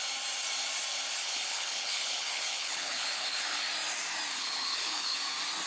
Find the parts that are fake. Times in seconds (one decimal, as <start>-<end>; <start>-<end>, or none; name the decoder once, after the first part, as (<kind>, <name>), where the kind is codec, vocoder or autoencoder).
1.2-3.6 (codec, HILCodec); 4.3-5.2